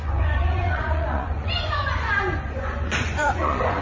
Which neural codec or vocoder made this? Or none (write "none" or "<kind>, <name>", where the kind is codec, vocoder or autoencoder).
vocoder, Vocos